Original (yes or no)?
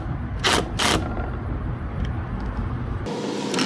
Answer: yes